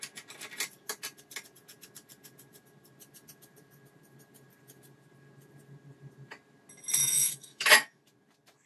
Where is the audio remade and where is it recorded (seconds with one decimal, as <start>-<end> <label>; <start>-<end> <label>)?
0.0-7.0 recorded; 7.0-8.0 remade; 8.0-8.7 recorded